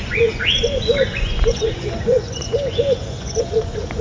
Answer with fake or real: fake